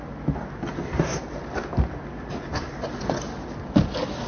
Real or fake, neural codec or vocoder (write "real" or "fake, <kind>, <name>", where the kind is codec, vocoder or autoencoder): real